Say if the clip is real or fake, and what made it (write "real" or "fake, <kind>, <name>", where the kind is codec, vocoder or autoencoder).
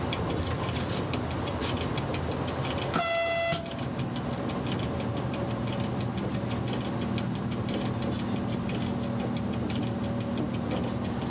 real